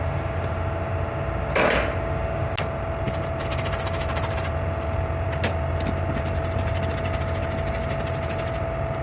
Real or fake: real